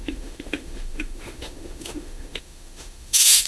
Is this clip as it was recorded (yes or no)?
no